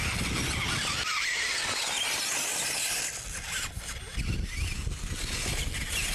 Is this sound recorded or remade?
recorded